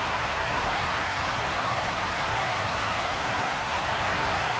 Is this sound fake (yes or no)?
yes